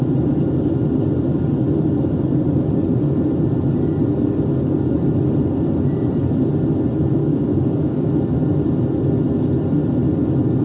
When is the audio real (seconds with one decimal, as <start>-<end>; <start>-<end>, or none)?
0.0-7.2; 8.1-10.6